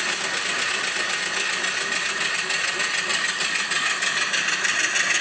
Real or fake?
real